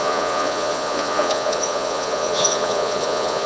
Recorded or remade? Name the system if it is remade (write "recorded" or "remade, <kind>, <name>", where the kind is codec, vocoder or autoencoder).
remade, vocoder, Vocos